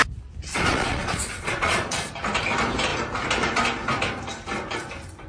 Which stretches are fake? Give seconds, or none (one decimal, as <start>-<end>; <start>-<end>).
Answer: 0.5-2.1